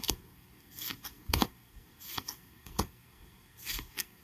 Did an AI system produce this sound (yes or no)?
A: yes